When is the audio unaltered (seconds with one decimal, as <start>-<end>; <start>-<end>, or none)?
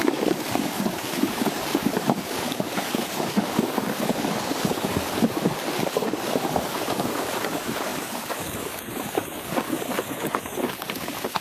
none